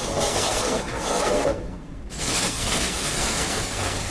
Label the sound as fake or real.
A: fake